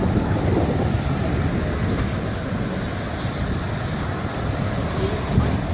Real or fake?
real